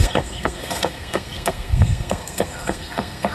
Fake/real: fake